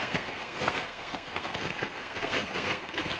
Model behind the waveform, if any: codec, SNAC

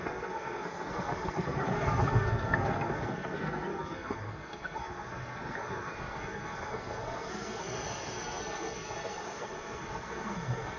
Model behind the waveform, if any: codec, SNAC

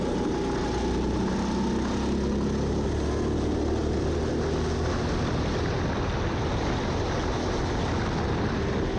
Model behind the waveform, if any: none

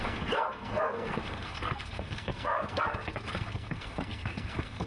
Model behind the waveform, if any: codec, SNAC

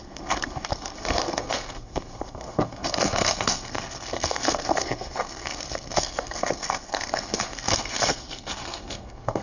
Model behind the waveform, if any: codec, SNAC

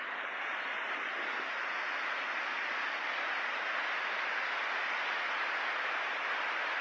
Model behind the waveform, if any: none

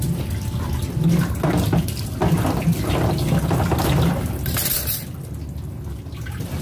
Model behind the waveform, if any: none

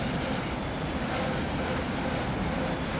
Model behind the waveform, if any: none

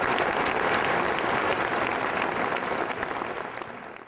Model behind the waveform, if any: none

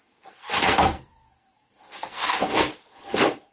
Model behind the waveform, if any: codec, SNAC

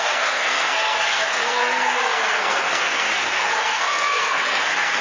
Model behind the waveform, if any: codec, SNAC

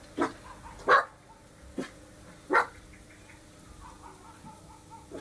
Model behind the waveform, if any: none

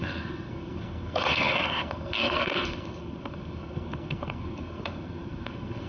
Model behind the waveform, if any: codec, SNAC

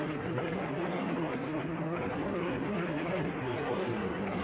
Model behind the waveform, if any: codec, SNAC